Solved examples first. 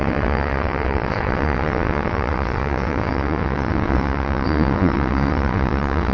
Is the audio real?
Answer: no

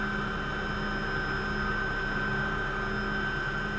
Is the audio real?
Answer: yes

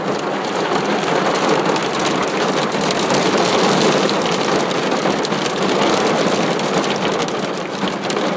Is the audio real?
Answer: yes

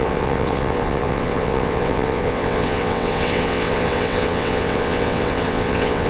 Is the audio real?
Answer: no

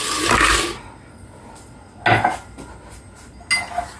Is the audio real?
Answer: yes